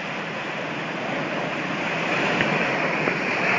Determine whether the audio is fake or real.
real